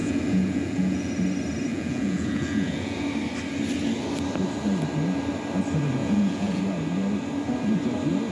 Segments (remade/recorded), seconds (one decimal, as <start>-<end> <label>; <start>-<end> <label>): 0.0-1.1 remade; 1.1-1.7 recorded; 1.7-3.0 remade; 3.0-6.0 recorded; 6.0-6.6 remade; 6.6-8.3 recorded